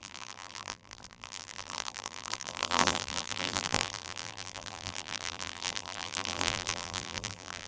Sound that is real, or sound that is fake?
fake